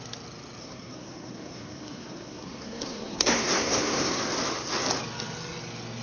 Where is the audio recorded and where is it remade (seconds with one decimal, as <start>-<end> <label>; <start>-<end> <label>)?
0.0-0.6 recorded; 0.6-4.2 remade; 4.2-6.0 recorded

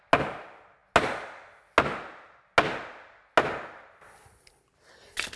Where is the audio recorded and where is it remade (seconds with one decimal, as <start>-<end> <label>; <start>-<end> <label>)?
0.0-5.4 recorded

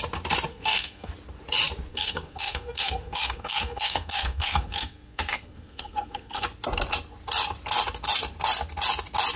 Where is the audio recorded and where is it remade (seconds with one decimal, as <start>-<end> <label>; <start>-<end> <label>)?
0.0-0.5 recorded; 0.5-1.1 remade; 1.1-1.9 recorded; 1.9-6.4 remade; 6.4-9.4 recorded

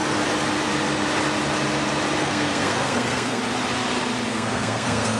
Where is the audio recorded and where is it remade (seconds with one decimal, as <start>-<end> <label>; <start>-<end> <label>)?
0.0-2.2 recorded; 2.2-3.4 remade; 3.4-4.3 recorded; 4.3-5.2 remade

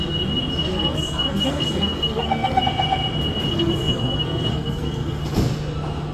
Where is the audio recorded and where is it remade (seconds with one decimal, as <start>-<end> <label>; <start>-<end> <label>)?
0.0-0.7 recorded; 0.7-2.6 remade; 2.6-3.5 recorded; 3.5-5.2 remade; 5.2-6.1 recorded

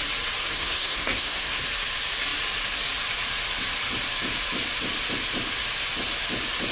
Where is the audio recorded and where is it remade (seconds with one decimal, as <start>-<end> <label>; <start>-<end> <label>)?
0.0-0.4 recorded; 0.4-1.6 remade; 1.6-6.7 recorded

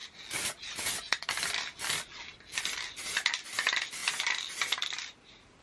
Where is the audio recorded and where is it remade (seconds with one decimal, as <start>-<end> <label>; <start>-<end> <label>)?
0.0-5.6 recorded

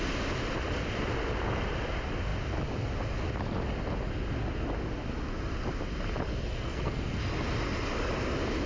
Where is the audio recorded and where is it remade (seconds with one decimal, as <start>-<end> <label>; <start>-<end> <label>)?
0.0-6.5 recorded; 6.5-7.2 remade; 7.2-8.7 recorded